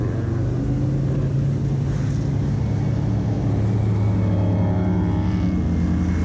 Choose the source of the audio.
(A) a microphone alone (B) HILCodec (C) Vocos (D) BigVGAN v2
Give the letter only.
A